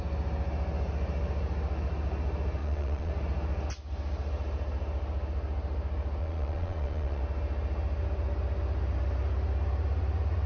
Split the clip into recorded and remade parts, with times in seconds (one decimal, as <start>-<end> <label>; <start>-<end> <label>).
0.0-2.6 recorded; 2.6-3.1 remade; 3.1-6.2 recorded; 6.2-7.2 remade; 7.2-10.5 recorded